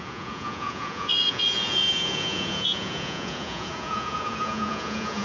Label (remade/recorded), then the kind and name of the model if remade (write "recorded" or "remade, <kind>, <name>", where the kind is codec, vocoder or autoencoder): remade, vocoder, Vocos